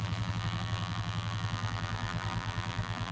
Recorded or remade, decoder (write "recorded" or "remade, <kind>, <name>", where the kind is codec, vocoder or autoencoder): remade, vocoder, BigVGAN v2